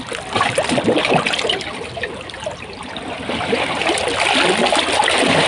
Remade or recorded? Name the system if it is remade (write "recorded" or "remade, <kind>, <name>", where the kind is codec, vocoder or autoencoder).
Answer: recorded